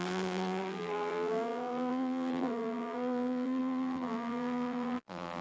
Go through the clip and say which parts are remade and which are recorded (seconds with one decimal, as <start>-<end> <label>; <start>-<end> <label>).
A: 0.0-5.4 remade